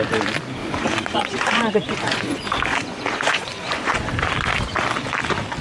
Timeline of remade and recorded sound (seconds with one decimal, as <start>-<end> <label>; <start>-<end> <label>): 0.0-0.6 recorded; 0.6-4.0 remade; 4.0-5.6 recorded